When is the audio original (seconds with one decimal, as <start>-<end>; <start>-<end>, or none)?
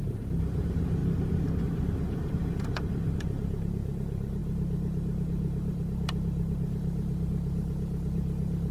1.0-1.6